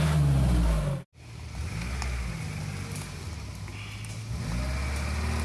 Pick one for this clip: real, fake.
real